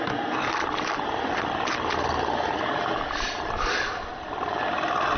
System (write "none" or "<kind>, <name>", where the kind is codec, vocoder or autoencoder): vocoder, BigVGAN v2